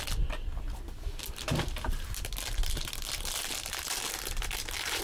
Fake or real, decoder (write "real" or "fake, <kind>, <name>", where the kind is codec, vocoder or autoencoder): real